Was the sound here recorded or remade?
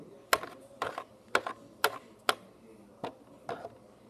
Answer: recorded